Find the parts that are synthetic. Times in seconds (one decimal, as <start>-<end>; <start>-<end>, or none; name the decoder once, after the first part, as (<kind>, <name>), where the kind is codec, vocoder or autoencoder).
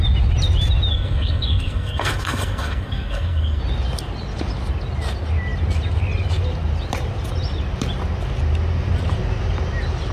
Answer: 0.9-3.6 (codec, SNAC)